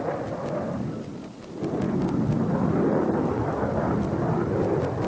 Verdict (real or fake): real